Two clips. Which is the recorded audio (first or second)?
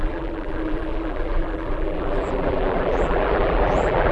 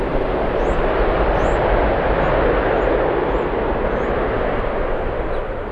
second